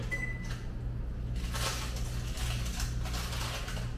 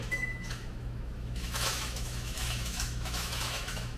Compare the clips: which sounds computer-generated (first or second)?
second